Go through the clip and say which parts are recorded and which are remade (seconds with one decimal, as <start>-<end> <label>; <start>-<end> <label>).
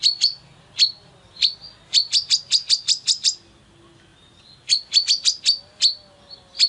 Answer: 0.0-6.7 recorded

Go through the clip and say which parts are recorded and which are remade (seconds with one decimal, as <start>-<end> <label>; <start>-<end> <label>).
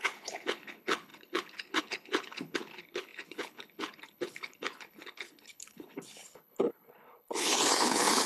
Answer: 0.0-8.3 remade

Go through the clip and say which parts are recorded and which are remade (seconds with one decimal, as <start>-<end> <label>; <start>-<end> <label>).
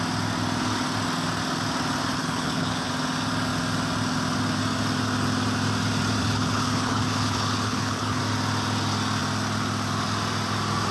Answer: 0.0-2.2 recorded; 2.2-2.9 remade; 2.9-6.2 recorded; 6.2-8.2 remade; 8.2-10.9 recorded